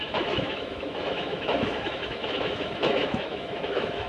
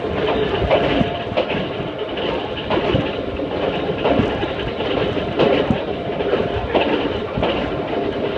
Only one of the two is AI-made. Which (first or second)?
first